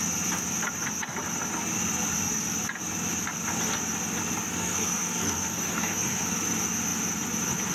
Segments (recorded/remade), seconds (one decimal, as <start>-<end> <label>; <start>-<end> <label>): 0.0-4.6 recorded; 4.6-6.3 remade; 6.3-7.7 recorded